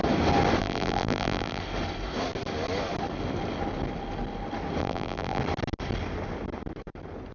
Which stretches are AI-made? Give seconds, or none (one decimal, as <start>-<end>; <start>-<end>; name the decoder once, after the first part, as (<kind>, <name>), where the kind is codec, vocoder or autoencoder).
0.6-1.6 (vocoder, BigVGAN v2); 4.8-5.4